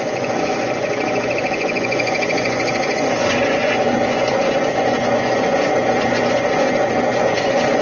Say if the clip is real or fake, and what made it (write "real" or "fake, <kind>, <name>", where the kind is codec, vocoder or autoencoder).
fake, vocoder, Vocos